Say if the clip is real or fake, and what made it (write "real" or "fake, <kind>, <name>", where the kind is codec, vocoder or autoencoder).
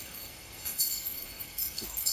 fake, codec, SNAC